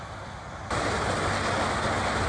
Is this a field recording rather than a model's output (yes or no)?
yes